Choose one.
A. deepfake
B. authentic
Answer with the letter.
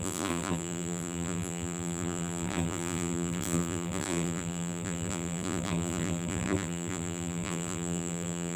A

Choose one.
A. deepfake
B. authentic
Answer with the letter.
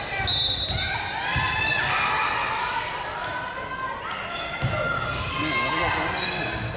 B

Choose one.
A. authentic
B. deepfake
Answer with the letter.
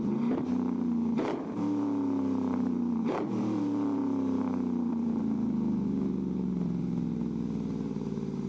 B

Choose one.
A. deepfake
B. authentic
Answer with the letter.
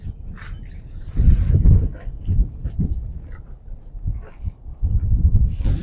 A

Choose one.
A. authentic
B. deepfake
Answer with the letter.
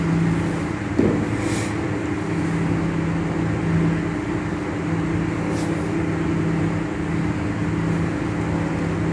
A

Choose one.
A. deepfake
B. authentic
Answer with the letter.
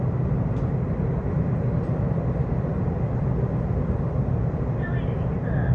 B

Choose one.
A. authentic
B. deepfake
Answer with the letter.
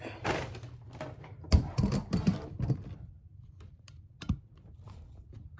A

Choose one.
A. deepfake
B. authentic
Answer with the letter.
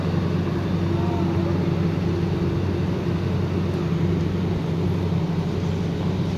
B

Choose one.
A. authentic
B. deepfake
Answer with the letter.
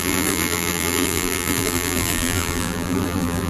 B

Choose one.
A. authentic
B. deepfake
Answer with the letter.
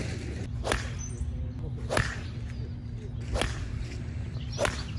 A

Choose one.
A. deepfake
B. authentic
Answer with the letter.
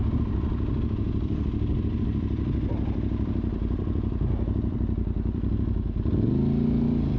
A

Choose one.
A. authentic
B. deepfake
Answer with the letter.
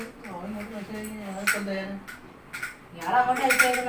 A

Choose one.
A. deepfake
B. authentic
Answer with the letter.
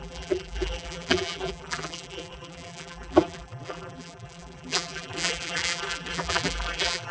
A